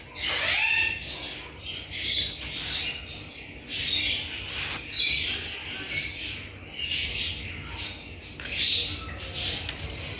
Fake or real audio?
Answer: real